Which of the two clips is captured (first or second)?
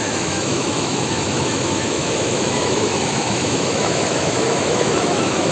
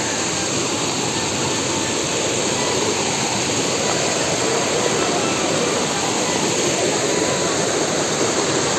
second